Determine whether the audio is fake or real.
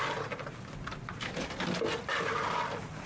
real